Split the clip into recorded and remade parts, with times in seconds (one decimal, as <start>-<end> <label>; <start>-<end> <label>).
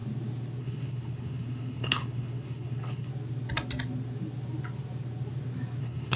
0.0-0.6 recorded; 0.6-3.1 remade; 3.1-5.8 recorded; 5.8-6.2 remade